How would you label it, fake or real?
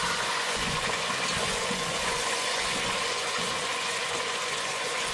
fake